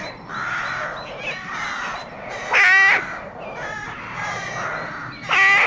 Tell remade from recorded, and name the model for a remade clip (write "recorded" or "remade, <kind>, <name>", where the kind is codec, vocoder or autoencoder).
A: recorded